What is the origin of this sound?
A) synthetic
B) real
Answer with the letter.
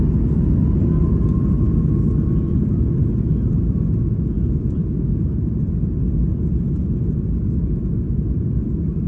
B